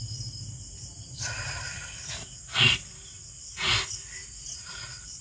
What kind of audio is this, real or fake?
real